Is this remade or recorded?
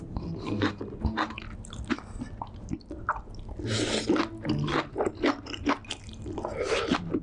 recorded